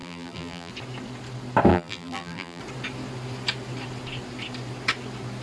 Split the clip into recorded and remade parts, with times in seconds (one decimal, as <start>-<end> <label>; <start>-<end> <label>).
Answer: 0.0-0.7 remade; 0.7-1.7 recorded; 1.7-2.6 remade; 2.6-5.4 recorded